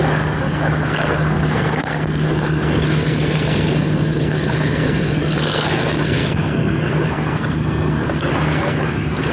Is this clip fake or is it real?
fake